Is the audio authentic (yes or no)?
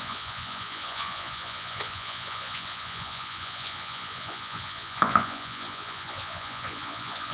no